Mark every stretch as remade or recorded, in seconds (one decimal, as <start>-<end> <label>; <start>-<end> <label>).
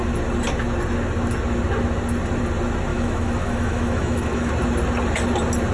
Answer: 0.0-2.9 recorded; 2.9-4.5 remade; 4.5-5.7 recorded